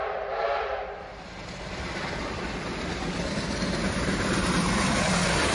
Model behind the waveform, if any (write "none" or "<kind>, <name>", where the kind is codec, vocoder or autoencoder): none